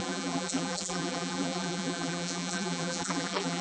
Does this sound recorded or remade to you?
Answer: remade